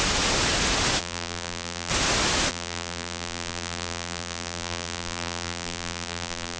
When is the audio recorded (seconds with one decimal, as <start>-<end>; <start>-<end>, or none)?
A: 0.0-1.0; 1.9-2.5